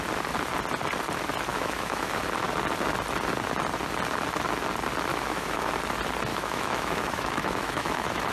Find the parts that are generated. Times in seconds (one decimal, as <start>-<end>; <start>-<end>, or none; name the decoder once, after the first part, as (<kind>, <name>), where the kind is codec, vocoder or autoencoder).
1.5-2.2 (autoencoder, DAC-VAE); 5.1-5.7; 6.3-8.3